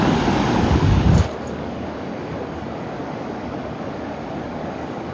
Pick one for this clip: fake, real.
fake